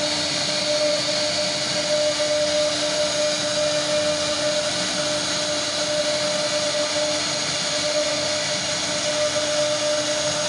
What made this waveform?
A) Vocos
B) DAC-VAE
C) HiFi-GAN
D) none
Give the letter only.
D